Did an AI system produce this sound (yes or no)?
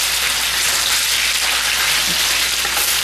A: no